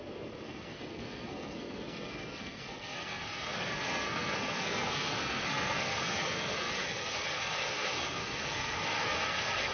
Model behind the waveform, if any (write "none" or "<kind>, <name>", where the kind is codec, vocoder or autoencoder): codec, SNAC